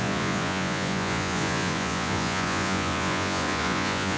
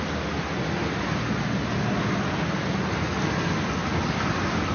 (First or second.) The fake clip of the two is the first